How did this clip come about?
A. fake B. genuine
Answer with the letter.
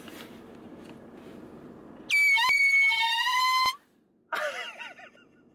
B